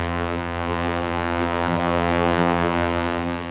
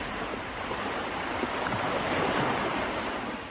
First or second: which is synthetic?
first